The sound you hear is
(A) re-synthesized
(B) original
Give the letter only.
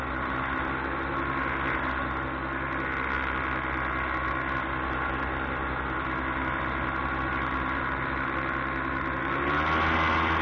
B